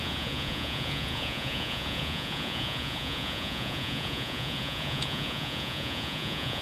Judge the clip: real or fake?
fake